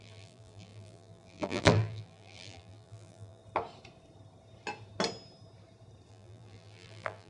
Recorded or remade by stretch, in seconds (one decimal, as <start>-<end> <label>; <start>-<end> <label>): 0.0-3.4 remade; 3.4-6.1 recorded; 6.1-7.3 remade

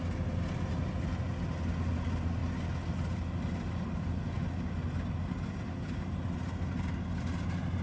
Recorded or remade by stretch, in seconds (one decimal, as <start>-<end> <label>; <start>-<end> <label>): 0.0-7.8 recorded